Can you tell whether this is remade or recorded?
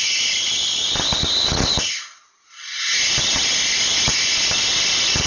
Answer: recorded